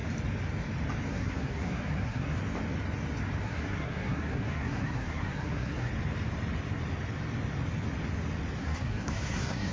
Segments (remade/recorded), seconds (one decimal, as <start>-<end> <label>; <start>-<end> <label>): 0.0-1.1 recorded; 1.1-2.4 remade; 2.4-3.4 recorded; 3.4-5.9 remade; 5.9-8.6 recorded; 8.6-9.7 remade